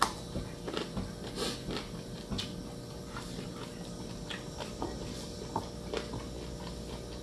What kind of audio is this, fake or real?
real